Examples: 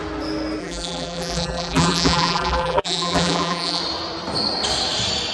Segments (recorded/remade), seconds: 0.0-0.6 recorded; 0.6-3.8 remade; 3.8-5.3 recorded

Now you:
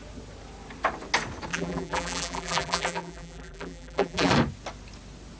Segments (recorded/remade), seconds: 0.0-1.5 recorded; 1.5-4.3 remade; 4.3-5.4 recorded

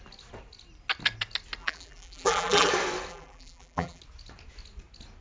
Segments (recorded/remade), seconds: 0.0-1.6 recorded; 1.6-2.7 remade; 2.7-3.1 recorded; 3.1-4.0 remade; 4.0-5.2 recorded